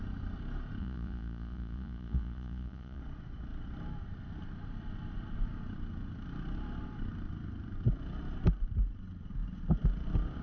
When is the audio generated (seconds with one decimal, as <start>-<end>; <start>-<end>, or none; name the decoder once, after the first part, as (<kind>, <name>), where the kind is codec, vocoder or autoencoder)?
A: 0.8-3.0 (vocoder, Vocos)